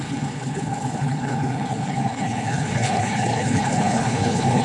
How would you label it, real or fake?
fake